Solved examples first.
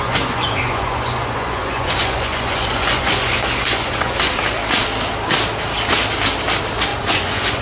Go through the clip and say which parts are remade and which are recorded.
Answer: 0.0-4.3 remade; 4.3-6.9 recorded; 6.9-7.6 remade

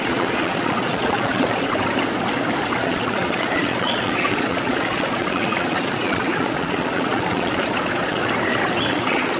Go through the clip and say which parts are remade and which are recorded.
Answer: 0.0-1.7 remade; 1.7-2.8 recorded; 2.8-8.2 remade; 8.2-8.9 recorded; 8.9-9.4 remade

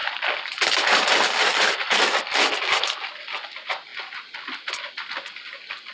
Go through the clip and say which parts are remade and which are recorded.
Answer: 0.0-1.5 recorded; 1.5-2.0 remade; 2.0-5.9 recorded

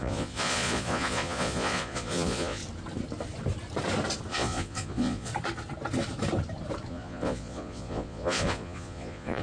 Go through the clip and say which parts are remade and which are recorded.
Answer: 0.0-2.6 remade; 2.6-4.3 recorded; 4.3-5.3 remade; 5.3-6.9 recorded; 6.9-9.4 remade